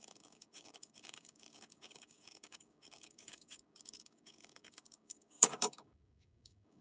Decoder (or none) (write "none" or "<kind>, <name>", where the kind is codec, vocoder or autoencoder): codec, DAC